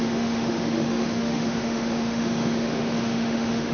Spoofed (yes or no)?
yes